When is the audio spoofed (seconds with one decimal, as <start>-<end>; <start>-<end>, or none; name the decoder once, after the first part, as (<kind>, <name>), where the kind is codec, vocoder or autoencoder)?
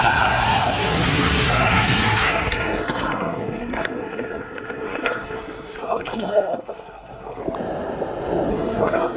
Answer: 0.0-7.4 (codec, SNAC); 8.5-9.2